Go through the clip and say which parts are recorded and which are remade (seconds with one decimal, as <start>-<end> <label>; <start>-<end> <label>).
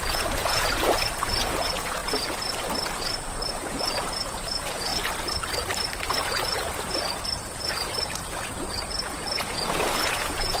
0.0-2.0 remade; 2.0-3.5 recorded; 3.5-4.9 remade; 4.9-6.0 recorded; 6.0-10.6 remade